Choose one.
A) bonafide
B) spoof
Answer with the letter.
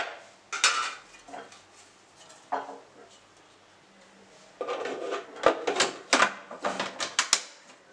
A